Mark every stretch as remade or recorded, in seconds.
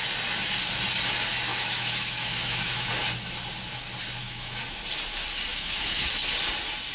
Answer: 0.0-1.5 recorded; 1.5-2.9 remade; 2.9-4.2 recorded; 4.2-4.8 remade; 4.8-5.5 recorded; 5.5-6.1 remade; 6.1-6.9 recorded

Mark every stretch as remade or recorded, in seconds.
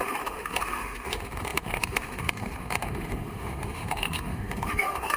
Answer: 0.0-5.2 remade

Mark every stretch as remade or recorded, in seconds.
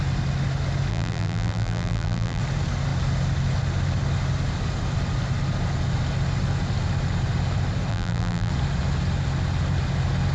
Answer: 0.0-0.9 recorded; 0.9-2.4 remade; 2.4-7.9 recorded; 7.9-8.5 remade; 8.5-10.3 recorded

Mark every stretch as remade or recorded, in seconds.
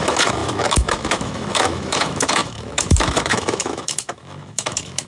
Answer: 0.0-5.1 remade